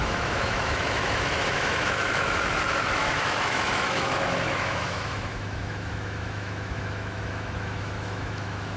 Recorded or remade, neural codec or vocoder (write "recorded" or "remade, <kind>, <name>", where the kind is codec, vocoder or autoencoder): remade, autoencoder, DAC-VAE